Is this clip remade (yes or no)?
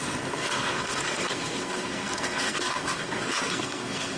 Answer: yes